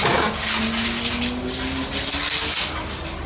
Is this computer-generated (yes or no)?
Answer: no